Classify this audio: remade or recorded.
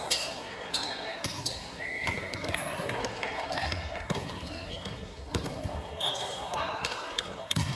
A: remade